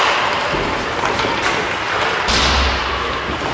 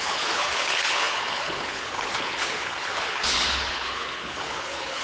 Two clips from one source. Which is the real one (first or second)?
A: first